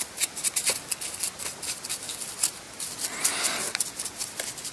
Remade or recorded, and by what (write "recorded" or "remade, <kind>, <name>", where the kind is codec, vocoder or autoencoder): recorded